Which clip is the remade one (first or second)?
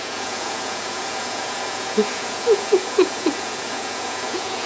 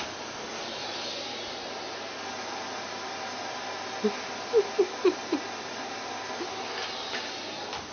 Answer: first